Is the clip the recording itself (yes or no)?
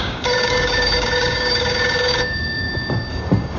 no